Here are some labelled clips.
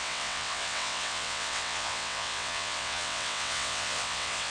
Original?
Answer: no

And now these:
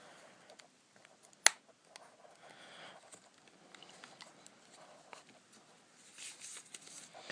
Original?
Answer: yes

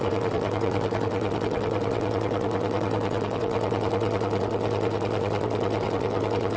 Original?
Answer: no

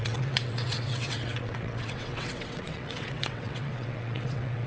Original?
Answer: no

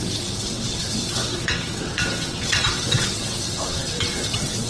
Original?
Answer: no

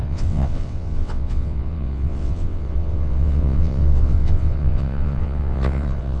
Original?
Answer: no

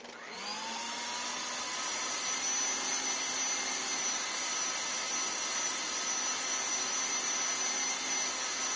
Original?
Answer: yes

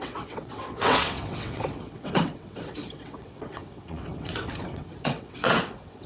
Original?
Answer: no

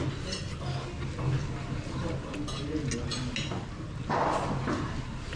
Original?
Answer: yes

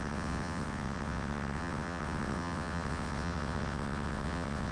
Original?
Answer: no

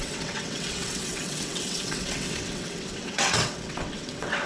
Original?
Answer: no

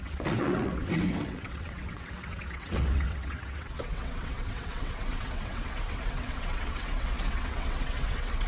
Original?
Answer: no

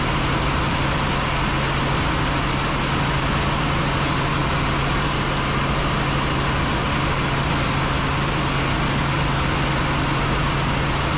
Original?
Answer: yes